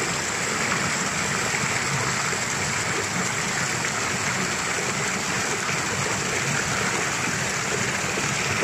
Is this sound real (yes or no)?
yes